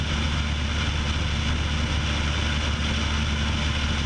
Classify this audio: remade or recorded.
recorded